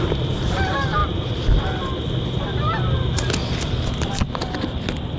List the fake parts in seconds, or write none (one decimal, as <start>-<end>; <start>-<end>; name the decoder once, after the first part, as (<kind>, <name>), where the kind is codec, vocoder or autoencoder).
none